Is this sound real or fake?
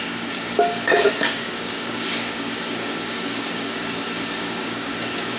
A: fake